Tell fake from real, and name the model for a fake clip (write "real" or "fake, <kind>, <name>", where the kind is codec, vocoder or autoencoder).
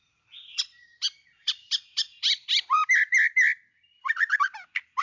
fake, vocoder, BigVGAN v2